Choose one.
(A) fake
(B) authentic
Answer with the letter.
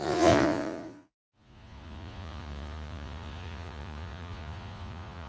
A